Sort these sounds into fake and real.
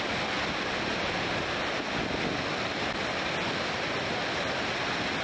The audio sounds real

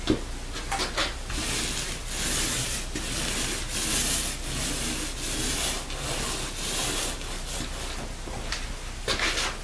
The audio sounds real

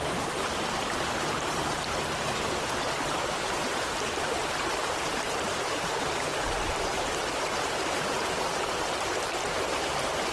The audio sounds fake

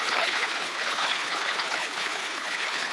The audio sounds fake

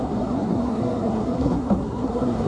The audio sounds fake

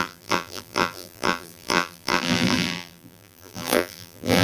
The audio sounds fake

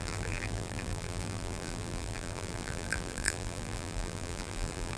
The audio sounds fake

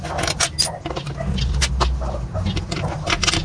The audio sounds real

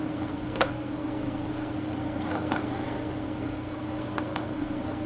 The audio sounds fake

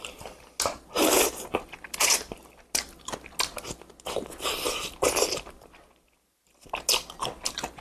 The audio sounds real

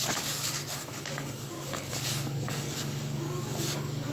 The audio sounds fake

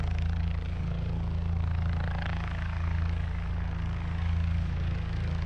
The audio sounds fake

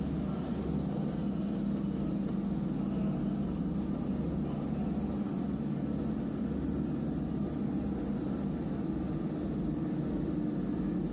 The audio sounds real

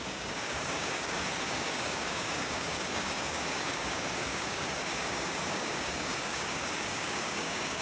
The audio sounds fake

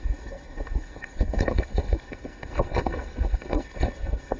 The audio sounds fake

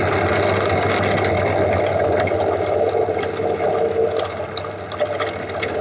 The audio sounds real